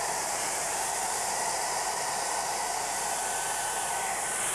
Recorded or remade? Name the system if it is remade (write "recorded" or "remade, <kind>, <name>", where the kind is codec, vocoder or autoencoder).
remade, vocoder, BigVGAN v2